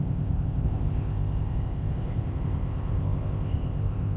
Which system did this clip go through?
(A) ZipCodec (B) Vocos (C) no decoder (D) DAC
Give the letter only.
A